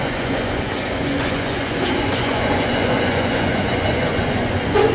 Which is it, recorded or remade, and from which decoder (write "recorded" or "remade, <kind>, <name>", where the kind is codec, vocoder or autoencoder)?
remade, vocoder, Vocos